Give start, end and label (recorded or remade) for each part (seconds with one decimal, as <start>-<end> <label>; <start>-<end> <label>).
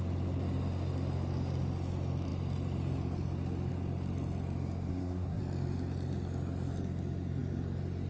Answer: 0.0-4.9 recorded; 4.9-5.4 remade; 5.4-8.1 recorded